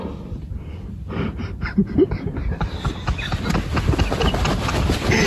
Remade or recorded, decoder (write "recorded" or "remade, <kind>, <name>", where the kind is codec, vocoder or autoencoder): recorded